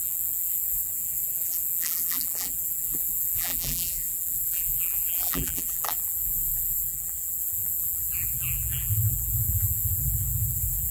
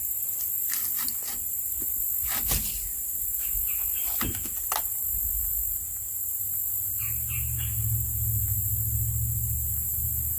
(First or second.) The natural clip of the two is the second